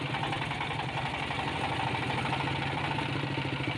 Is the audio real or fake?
real